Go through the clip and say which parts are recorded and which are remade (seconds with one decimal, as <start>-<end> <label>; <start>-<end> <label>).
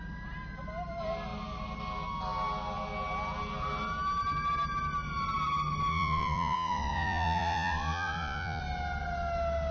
0.0-5.9 recorded; 5.9-8.6 remade; 8.6-9.7 recorded